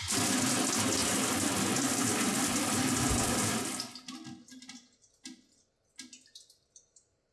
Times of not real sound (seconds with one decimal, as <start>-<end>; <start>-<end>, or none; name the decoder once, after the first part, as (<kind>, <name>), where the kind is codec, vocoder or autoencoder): 1.0-3.8 (vocoder, BigVGAN v2)